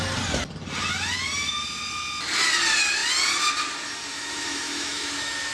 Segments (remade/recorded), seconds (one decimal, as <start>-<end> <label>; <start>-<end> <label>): 0.0-4.1 recorded; 4.1-5.5 remade